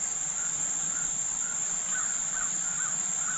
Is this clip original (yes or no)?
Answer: yes